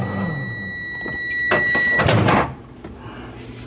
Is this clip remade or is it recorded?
recorded